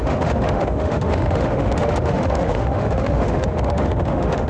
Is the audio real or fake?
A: fake